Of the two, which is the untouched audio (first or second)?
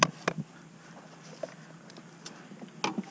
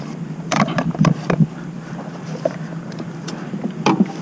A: first